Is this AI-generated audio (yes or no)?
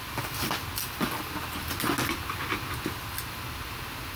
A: no